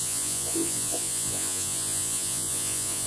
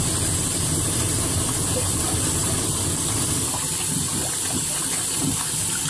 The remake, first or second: first